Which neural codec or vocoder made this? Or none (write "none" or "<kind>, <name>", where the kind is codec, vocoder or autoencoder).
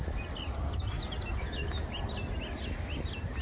none